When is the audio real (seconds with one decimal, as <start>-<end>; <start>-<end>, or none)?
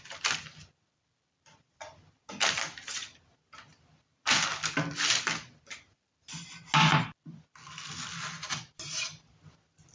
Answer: 0.0-9.9